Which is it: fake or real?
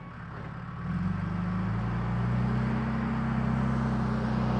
real